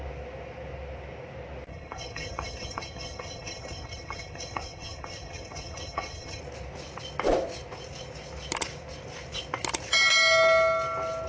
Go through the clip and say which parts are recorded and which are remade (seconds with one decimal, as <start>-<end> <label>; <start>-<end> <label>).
0.0-1.7 recorded; 1.7-6.4 remade; 6.4-11.3 recorded